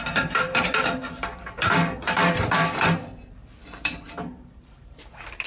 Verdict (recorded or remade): remade